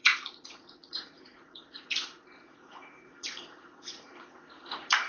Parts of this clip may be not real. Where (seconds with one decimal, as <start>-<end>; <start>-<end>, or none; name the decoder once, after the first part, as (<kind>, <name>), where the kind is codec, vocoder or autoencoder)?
0.0-5.1 (vocoder, Vocos)